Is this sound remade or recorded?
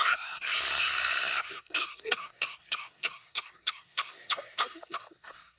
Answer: remade